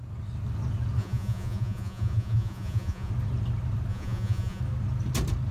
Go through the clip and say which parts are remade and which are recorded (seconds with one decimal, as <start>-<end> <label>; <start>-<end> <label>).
0.0-1.0 recorded; 1.0-3.1 remade; 3.1-3.9 recorded; 3.9-4.6 remade; 4.6-5.5 recorded